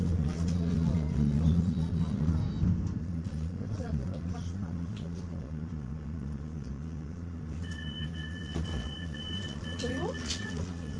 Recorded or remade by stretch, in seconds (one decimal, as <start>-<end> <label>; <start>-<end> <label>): 0.0-2.4 remade; 2.4-3.0 recorded; 3.0-11.0 remade

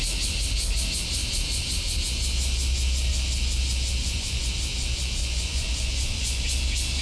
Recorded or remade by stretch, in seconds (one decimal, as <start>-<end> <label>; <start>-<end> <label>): 0.0-4.0 recorded; 4.0-4.5 remade; 4.5-5.2 recorded; 5.2-6.4 remade; 6.4-7.0 recorded

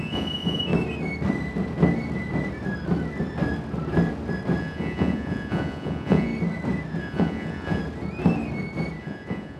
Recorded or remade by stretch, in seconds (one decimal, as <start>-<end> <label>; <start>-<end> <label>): 0.0-0.7 remade; 0.7-4.6 recorded; 4.6-6.3 remade; 6.3-7.0 recorded; 7.0-7.8 remade; 7.8-9.0 recorded; 9.0-9.6 remade

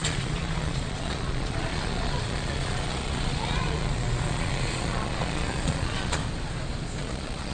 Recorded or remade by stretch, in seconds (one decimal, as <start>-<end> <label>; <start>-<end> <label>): 0.0-6.2 remade; 6.2-7.0 recorded; 7.0-7.5 remade

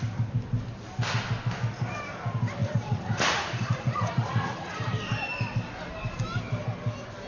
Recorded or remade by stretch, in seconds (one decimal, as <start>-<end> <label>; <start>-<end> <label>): 0.0-2.6 recorded; 2.6-4.8 remade; 4.8-7.3 recorded

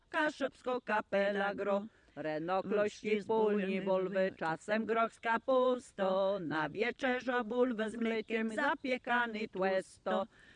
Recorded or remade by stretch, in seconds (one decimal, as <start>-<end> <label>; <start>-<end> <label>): 0.0-4.9 recorded; 4.9-8.0 remade; 8.0-10.6 recorded

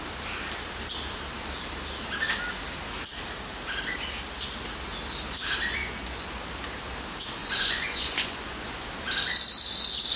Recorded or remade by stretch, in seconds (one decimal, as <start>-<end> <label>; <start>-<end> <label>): 0.0-5.8 recorded; 5.8-6.4 remade; 6.4-7.4 recorded; 7.4-8.9 remade; 8.9-10.2 recorded